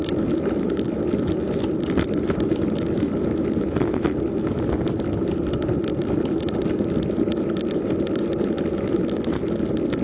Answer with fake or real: real